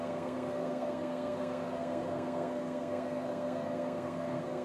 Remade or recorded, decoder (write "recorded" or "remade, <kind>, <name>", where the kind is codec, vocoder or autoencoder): remade, codec, SNAC